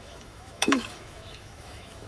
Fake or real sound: fake